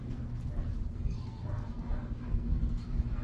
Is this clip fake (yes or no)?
yes